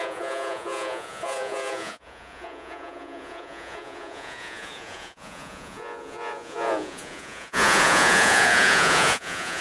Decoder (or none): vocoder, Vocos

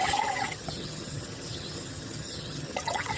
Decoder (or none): vocoder, HiFi-GAN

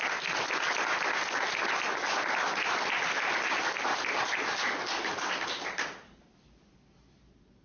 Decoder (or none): none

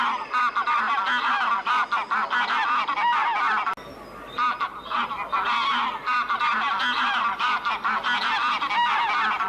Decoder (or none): none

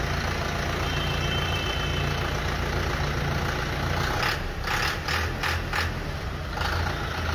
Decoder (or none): none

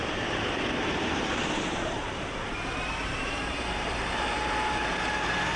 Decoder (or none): vocoder, BigVGAN v2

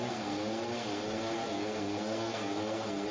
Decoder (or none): codec, SNAC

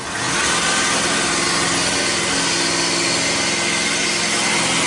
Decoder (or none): none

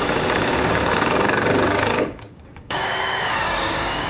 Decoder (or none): codec, DAC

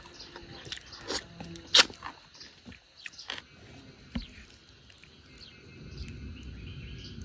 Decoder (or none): none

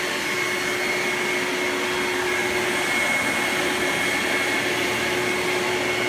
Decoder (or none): none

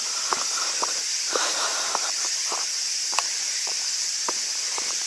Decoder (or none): vocoder, BigVGAN v2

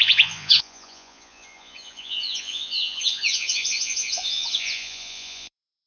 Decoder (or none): vocoder, Vocos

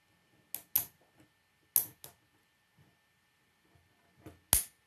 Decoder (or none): none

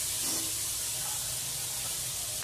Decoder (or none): vocoder, BigVGAN v2